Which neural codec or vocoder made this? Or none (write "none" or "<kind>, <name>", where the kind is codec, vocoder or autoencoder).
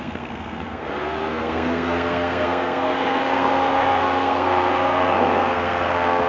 codec, SNAC